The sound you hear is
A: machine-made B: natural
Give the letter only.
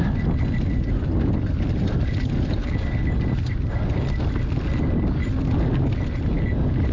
B